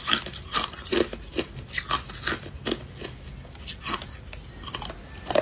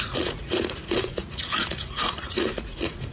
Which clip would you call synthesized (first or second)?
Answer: second